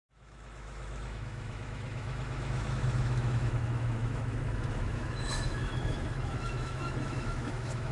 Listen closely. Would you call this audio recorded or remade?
remade